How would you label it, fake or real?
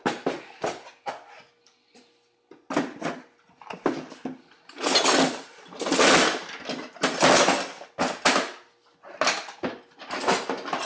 real